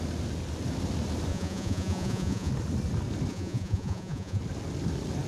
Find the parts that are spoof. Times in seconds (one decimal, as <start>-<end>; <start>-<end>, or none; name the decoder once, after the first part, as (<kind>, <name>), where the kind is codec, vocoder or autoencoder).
1.3-2.5 (vocoder, Vocos); 3.3-4.4